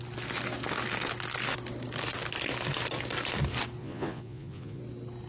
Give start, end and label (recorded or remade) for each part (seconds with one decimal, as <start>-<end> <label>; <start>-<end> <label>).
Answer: 0.0-3.8 recorded; 3.8-4.8 remade; 4.8-5.3 recorded